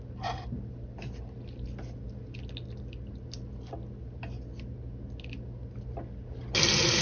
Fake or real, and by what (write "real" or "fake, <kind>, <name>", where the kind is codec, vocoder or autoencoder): real